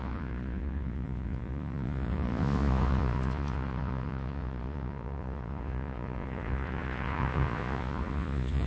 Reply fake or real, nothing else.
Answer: fake